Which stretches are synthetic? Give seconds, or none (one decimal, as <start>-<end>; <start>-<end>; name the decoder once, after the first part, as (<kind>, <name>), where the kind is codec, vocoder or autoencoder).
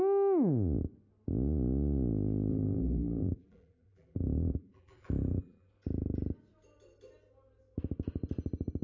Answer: 2.5-5.7 (vocoder, BigVGAN v2)